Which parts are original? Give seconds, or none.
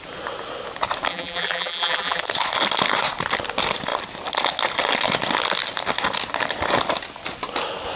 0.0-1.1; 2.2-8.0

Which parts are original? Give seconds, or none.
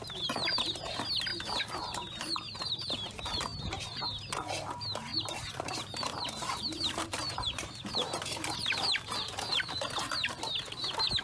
0.0-1.3; 3.1-5.1; 10.3-11.2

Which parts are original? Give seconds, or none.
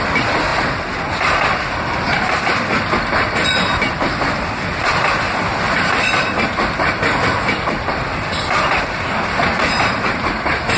0.0-10.8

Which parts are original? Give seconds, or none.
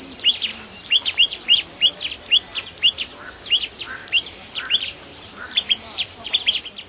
0.0-0.5; 1.9-4.0; 6.3-6.9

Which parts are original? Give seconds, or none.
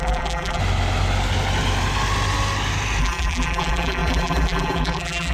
0.6-3.0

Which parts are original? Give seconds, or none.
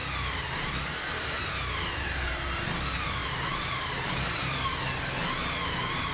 0.0-1.9; 2.6-3.2; 4.8-6.1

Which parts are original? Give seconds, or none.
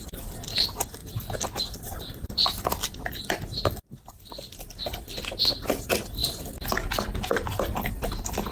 0.0-1.0; 3.9-8.5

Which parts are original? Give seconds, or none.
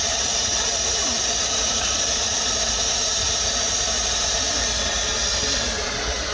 0.0-6.3